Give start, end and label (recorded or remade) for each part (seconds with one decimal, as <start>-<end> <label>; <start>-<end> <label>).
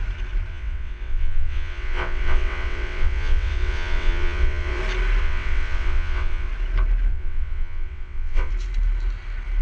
0.0-0.5 recorded; 0.5-4.8 remade; 4.8-5.2 recorded; 5.2-6.5 remade; 6.5-7.1 recorded; 7.1-8.5 remade; 8.5-9.6 recorded